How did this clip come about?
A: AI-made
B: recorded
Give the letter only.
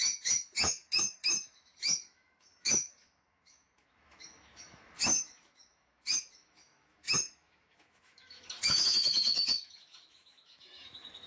A